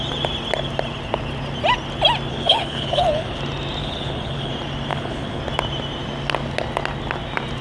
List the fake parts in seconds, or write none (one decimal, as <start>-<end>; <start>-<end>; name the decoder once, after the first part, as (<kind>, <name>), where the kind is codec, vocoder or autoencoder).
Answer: 2.3-3.4 (codec, HILCodec); 3.8-4.5; 4.9-5.4